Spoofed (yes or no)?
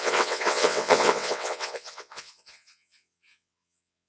yes